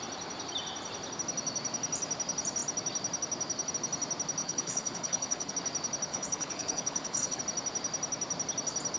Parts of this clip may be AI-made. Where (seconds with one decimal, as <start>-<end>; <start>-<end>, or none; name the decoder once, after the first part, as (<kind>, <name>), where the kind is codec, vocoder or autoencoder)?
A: 4.4-5.5 (codec, HILCodec); 6.1-7.4